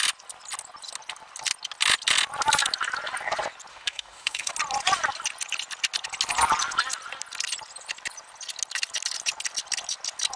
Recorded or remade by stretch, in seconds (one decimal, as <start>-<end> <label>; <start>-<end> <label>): 0.0-3.7 recorded; 3.7-4.5 remade; 4.5-10.4 recorded